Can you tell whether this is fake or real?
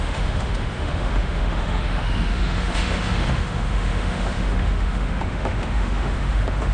fake